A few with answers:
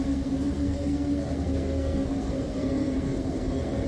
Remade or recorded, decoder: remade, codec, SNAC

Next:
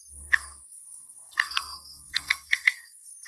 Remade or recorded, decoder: remade, codec, SNAC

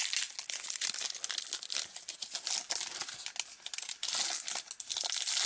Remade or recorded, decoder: recorded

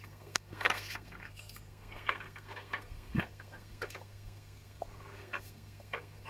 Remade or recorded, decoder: remade, codec, SNAC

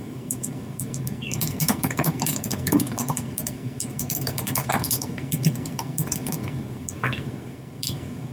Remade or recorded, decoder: remade, codec, SNAC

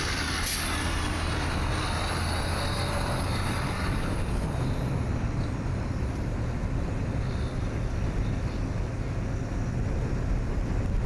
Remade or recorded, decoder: recorded